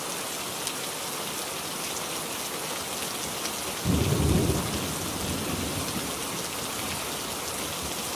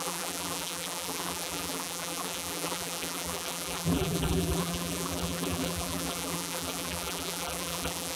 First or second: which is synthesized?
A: second